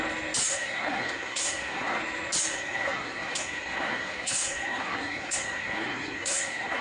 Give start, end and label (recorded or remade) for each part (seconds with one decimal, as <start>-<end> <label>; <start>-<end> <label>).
0.0-0.5 recorded; 0.5-2.0 remade; 2.0-2.5 recorded; 2.5-6.8 remade